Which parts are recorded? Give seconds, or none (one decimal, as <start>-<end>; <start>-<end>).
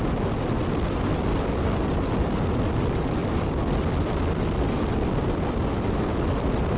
0.0-6.8